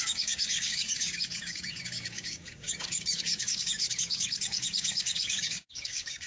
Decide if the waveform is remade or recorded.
remade